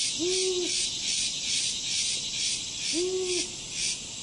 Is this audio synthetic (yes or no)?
no